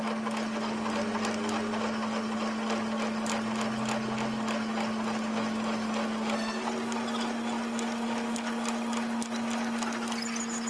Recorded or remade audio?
recorded